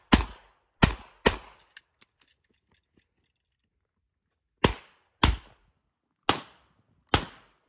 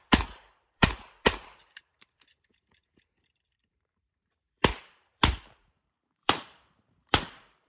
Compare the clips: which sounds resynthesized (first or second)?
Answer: second